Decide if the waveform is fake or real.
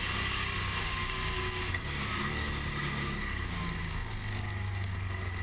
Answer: fake